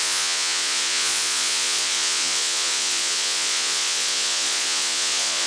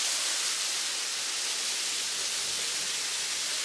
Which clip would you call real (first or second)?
second